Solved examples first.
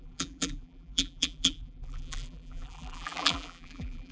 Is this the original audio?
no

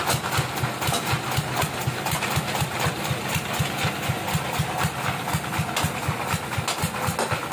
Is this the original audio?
yes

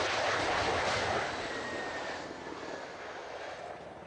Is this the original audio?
yes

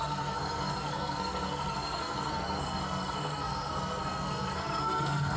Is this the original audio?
no